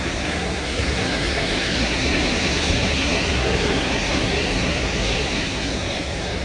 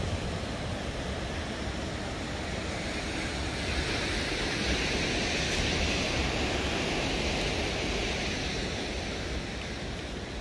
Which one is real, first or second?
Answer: second